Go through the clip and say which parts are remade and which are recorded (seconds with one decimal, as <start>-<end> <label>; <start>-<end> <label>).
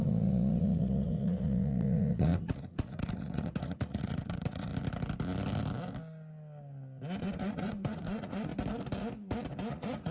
0.0-4.7 remade; 4.7-7.2 recorded; 7.2-8.5 remade; 8.5-9.7 recorded; 9.7-10.1 remade